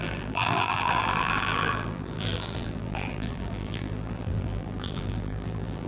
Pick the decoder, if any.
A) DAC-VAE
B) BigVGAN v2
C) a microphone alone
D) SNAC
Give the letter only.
B